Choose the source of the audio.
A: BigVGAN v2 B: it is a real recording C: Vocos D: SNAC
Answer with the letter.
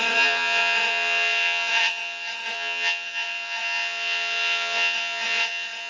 C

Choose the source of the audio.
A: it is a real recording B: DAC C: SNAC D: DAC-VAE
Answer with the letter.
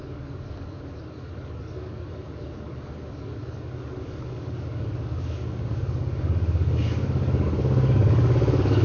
B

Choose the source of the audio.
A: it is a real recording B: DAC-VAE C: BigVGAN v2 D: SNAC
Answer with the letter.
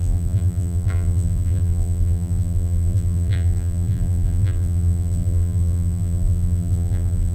C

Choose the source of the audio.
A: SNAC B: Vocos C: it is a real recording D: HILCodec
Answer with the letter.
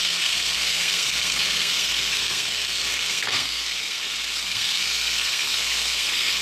A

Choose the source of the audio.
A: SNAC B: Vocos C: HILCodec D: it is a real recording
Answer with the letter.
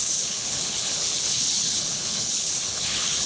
C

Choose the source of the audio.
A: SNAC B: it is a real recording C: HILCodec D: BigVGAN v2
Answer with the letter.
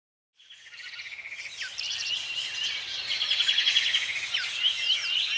D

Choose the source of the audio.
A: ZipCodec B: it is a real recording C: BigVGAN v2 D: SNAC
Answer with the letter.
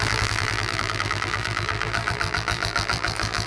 C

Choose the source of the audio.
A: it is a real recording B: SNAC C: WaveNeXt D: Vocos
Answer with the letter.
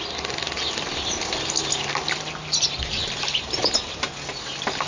A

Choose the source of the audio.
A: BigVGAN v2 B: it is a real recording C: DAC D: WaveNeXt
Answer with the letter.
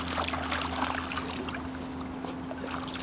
B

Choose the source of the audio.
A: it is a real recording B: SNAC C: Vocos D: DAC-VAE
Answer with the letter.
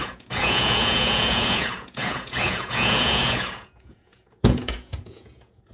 C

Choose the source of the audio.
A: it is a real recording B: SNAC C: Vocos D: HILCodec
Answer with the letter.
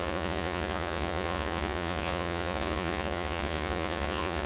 C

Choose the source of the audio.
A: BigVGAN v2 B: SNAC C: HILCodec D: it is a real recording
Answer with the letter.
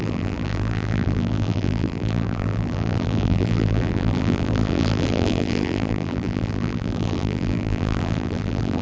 A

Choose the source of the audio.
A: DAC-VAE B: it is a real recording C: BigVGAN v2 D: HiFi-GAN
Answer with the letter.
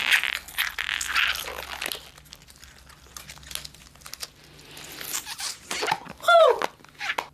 B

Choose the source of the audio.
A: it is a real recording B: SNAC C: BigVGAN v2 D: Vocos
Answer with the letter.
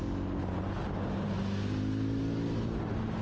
A